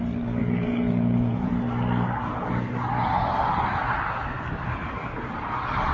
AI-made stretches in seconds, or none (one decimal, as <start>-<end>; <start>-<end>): 0.4-1.5